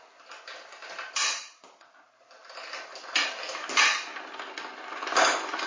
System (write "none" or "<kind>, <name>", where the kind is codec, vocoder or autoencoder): none